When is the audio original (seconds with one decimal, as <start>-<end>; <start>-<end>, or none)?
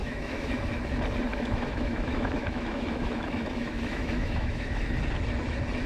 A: 0.6-1.3; 4.8-5.9